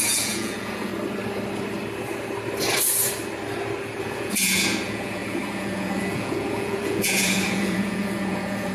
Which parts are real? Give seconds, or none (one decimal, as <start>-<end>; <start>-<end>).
0.9-4.0

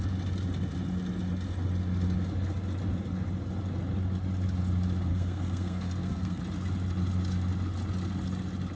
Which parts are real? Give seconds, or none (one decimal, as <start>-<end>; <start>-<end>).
0.0-5.1; 6.4-8.8

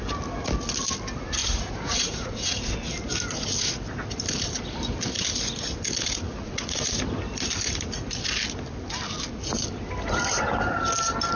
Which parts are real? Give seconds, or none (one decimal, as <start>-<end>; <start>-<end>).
0.0-1.4; 2.6-6.4; 7.0-11.4

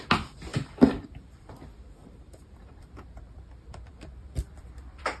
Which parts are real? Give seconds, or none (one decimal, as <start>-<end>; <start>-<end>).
0.0-0.5; 1.5-2.0